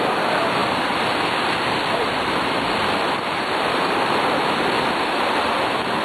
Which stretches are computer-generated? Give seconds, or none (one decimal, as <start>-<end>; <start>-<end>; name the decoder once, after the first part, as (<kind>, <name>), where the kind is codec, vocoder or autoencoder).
0.6-4.2 (vocoder, BigVGAN v2)